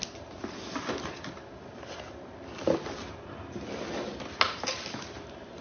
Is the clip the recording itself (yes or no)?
yes